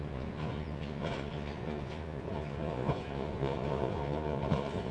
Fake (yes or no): yes